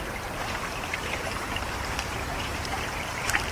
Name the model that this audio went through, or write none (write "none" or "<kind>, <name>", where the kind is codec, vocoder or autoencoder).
vocoder, BigVGAN v2